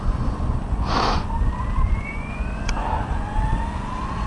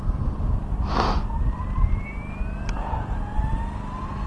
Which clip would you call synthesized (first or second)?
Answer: first